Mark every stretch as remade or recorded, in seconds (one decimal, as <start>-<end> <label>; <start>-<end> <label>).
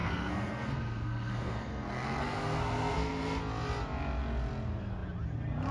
0.0-3.4 remade; 3.4-5.7 recorded